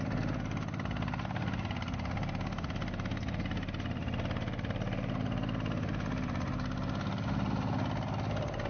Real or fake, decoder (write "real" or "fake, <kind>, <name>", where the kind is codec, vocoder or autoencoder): real